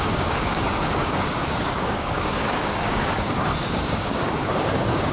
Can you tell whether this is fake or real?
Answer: fake